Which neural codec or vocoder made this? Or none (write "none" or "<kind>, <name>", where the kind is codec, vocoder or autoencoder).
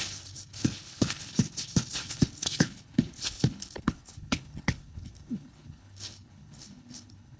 codec, HILCodec